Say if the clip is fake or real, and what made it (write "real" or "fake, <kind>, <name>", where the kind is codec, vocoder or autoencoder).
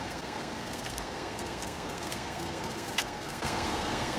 fake, codec, SNAC